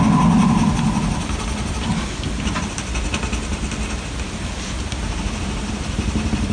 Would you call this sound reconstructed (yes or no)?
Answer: no